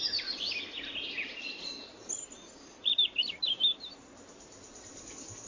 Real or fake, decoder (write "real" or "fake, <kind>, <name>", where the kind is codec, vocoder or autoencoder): real